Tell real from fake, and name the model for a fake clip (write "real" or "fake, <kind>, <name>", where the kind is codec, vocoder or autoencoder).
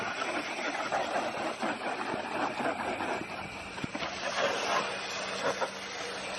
real